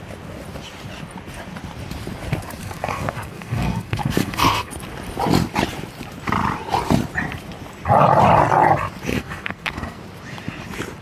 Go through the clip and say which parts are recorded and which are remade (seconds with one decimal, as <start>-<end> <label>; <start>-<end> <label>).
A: 0.0-2.6 recorded; 2.6-4.7 remade; 4.7-9.1 recorded; 9.1-10.0 remade; 10.0-11.0 recorded